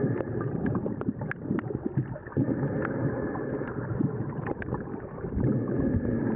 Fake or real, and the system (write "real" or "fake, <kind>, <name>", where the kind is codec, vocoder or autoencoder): real